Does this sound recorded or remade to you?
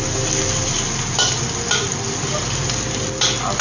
recorded